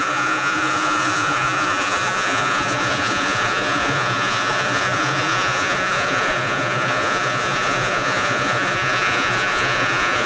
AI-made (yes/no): yes